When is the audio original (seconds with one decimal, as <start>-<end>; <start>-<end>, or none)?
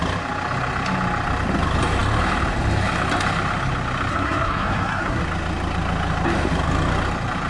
0.0-4.1; 5.2-7.5